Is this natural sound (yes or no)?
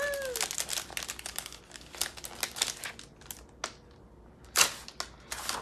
yes